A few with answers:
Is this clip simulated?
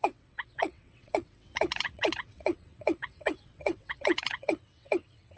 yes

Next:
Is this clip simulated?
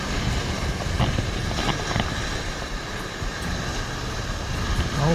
no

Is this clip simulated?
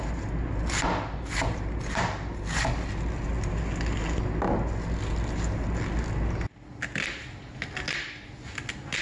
no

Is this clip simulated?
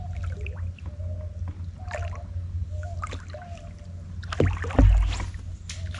no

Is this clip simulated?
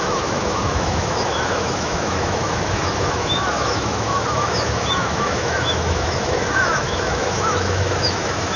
yes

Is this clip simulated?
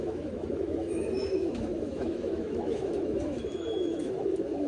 yes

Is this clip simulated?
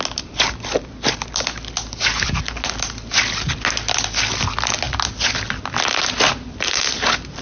no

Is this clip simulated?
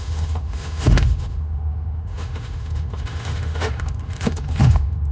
yes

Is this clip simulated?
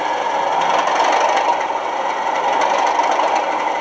no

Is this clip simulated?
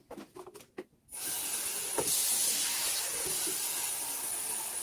no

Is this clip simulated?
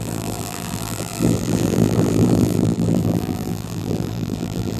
yes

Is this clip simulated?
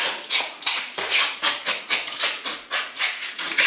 yes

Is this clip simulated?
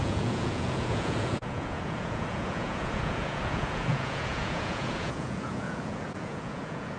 yes